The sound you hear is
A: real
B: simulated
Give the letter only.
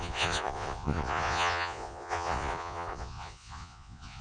B